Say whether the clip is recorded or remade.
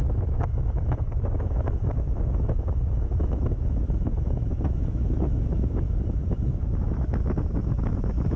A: remade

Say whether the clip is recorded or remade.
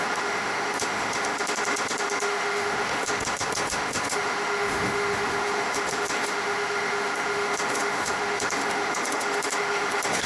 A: remade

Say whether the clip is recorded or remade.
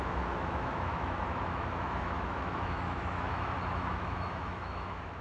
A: remade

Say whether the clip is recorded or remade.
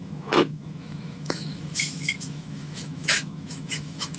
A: remade